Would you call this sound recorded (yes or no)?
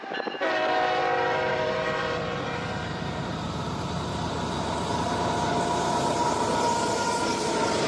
no